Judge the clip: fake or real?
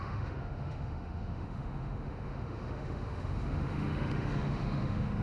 fake